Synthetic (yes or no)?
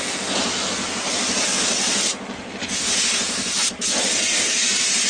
no